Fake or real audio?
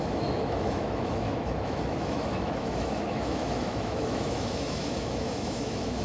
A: fake